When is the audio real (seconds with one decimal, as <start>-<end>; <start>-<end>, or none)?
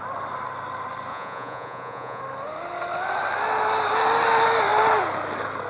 0.0-1.1; 2.2-5.7